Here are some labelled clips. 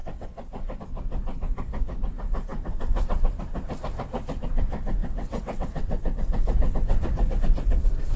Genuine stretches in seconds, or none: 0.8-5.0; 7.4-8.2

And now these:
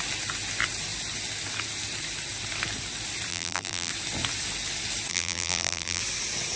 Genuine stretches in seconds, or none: 0.0-3.3; 3.9-5.1; 6.0-6.6

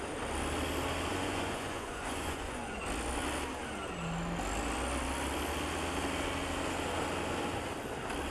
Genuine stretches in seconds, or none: 0.0-1.1; 2.8-8.3

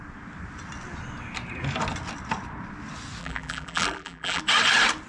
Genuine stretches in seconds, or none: 0.0-3.2; 4.4-5.1

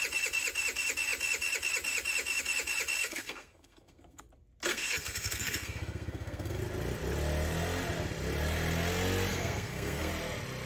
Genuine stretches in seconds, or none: 0.0-3.0; 4.2-4.7; 6.6-9.3; 10.1-10.7

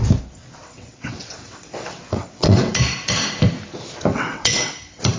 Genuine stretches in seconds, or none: 0.0-0.6; 2.7-4.1; 4.7-5.2

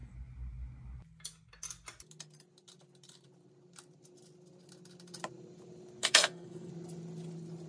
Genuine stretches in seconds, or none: 0.0-6.0; 6.7-7.7